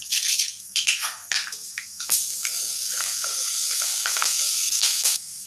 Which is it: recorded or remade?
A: remade